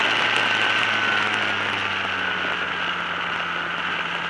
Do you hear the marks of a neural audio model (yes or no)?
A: no